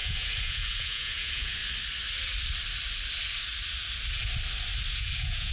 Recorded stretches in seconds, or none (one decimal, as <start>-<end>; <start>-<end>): 1.6-4.9